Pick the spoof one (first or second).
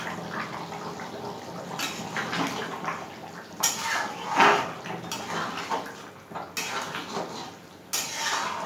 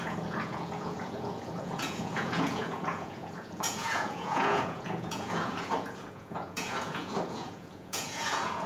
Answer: second